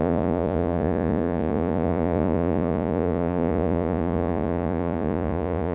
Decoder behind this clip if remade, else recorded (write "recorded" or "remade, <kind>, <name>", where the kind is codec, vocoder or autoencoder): remade, vocoder, Vocos